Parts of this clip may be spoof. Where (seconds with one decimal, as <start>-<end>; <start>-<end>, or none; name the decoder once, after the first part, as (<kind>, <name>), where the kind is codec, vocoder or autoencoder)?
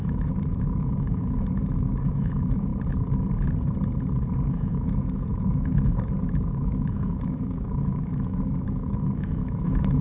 0.0-2.7 (autoencoder, DAC-VAE); 4.5-10.0